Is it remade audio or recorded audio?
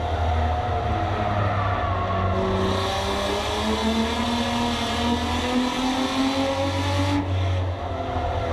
recorded